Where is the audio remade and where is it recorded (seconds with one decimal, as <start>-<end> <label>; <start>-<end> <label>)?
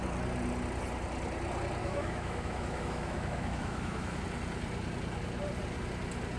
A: 0.0-1.8 recorded; 1.8-4.2 remade; 4.2-6.4 recorded